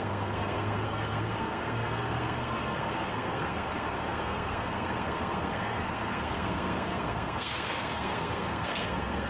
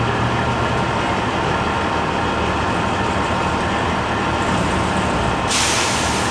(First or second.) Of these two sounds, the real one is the second